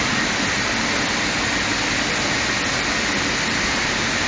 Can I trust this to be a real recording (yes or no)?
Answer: yes